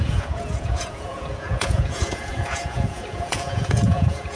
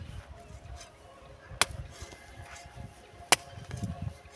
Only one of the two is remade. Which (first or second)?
first